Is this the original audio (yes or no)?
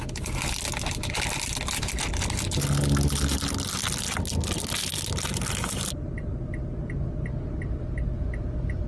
yes